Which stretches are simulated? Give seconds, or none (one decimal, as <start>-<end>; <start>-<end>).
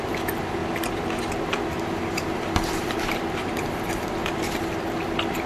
0.0-0.6; 1.5-5.5